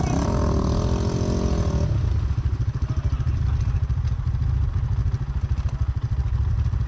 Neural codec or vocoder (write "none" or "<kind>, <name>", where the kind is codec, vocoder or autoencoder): none